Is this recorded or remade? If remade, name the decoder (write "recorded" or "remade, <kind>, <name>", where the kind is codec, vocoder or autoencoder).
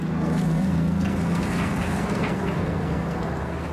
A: remade, codec, SNAC